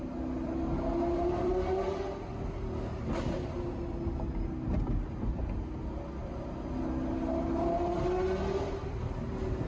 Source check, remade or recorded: recorded